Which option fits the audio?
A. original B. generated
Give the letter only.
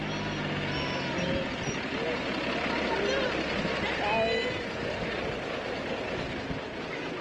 A